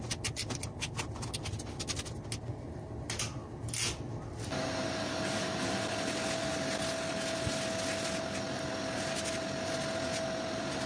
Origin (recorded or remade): recorded